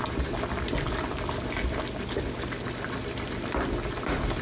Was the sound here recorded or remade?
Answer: recorded